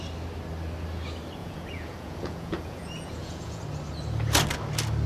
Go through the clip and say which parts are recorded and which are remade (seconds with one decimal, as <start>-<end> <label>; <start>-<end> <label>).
0.0-1.4 recorded; 1.4-3.6 remade; 3.6-5.1 recorded